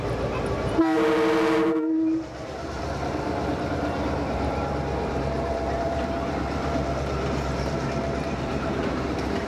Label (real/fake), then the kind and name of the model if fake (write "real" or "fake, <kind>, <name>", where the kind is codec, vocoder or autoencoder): fake, vocoder, BigVGAN v2